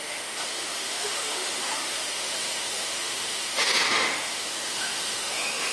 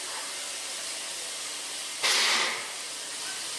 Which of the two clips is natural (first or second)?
second